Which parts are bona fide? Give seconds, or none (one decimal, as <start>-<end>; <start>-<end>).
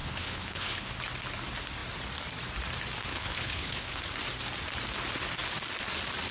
0.9-3.1; 4.1-6.3